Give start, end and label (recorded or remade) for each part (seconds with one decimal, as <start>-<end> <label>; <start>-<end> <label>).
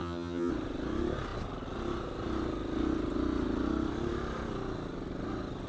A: 0.0-0.5 remade; 0.5-5.7 recorded